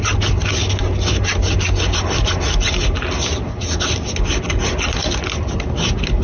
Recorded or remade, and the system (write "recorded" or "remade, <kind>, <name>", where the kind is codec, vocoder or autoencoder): recorded